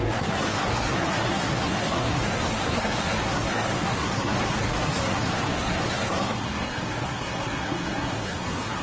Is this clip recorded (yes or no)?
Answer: no